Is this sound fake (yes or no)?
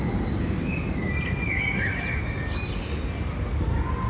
no